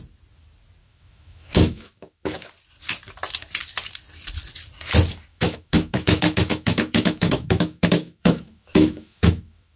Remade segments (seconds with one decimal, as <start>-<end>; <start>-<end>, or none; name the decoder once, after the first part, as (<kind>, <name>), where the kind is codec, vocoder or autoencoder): 0.8-2.5 (autoencoder, DAC-VAE); 5.3-9.8